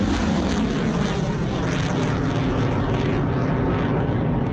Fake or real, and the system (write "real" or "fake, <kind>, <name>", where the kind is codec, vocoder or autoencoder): real